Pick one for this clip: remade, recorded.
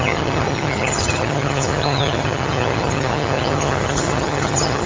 remade